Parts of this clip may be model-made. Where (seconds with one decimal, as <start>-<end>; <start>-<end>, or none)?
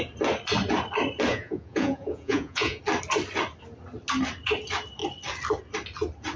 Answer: 1.3-2.8